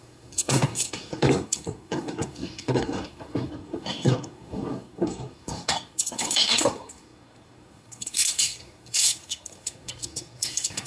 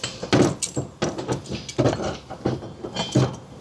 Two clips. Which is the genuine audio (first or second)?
second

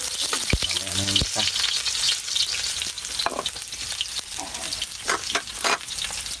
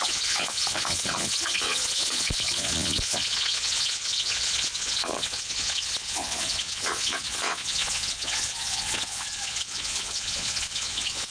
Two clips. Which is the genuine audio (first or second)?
first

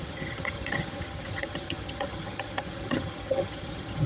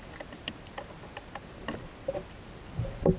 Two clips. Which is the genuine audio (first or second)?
second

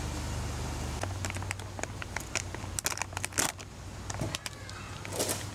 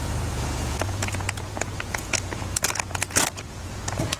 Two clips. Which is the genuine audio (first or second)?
first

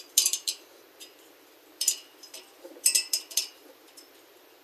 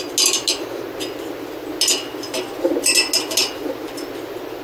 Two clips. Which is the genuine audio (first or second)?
second